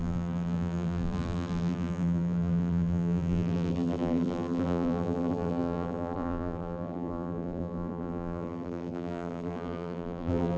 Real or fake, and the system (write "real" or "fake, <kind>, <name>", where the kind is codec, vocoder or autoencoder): fake, vocoder, BigVGAN v2